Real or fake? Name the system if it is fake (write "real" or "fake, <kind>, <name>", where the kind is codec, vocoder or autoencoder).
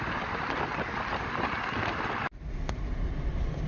real